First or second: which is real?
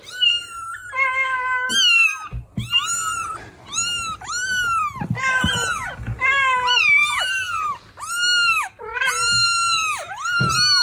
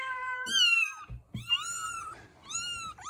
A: first